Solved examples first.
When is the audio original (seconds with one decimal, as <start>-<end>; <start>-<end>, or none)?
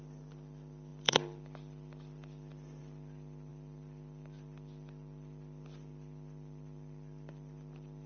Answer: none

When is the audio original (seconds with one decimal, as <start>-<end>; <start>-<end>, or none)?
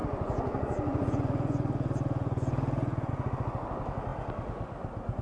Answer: 3.1-5.2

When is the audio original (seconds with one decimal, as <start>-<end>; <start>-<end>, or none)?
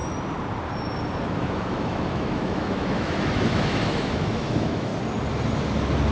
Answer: 0.0-1.2; 4.9-6.1